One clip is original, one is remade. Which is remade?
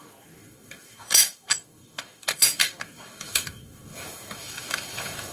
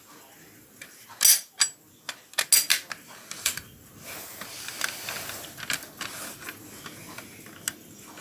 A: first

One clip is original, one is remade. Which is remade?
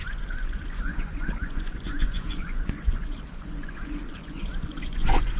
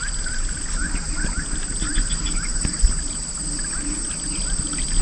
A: first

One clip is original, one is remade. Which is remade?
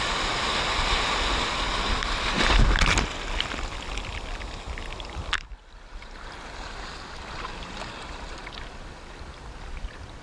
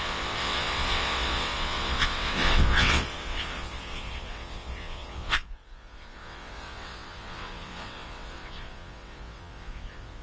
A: second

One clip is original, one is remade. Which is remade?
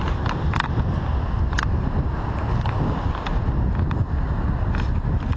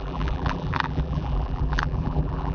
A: second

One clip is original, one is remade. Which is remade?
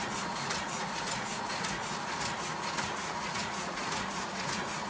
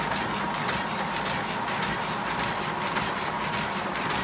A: first